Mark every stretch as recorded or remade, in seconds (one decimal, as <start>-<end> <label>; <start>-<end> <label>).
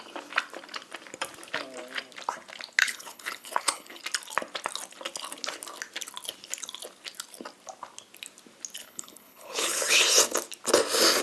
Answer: 0.0-2.8 recorded; 2.8-4.0 remade; 4.0-8.8 recorded; 8.8-10.0 remade; 10.0-11.2 recorded